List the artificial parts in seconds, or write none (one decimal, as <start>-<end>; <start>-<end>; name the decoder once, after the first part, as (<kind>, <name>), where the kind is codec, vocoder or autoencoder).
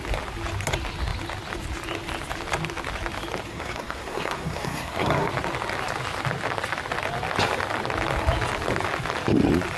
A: 3.5-5.3 (codec, SNAC)